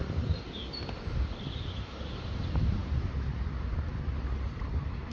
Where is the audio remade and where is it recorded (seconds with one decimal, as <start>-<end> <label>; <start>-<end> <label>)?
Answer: 0.0-5.1 recorded